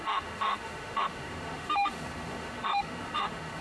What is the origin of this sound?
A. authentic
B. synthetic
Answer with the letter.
B